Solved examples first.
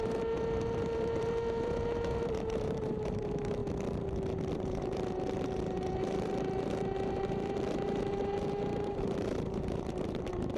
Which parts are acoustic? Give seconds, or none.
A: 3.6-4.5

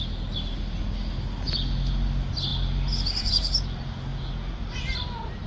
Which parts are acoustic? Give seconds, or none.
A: 0.0-5.5

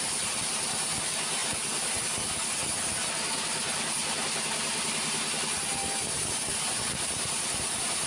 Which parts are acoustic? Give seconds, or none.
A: 0.0-8.1

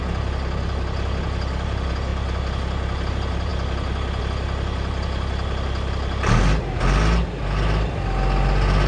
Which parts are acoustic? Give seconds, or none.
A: 0.0-8.9

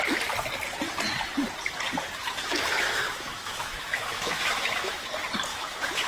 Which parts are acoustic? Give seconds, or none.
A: 0.0-2.2; 5.1-5.5